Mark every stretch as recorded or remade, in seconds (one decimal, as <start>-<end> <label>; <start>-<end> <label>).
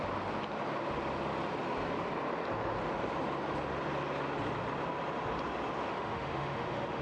0.0-5.9 recorded; 5.9-7.0 remade